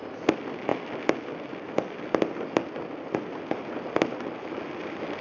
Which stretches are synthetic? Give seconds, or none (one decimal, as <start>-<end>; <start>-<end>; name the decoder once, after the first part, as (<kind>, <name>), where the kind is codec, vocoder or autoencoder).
none